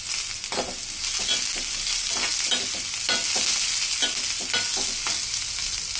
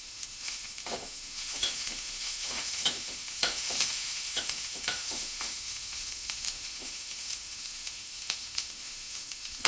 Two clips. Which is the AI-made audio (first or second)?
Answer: second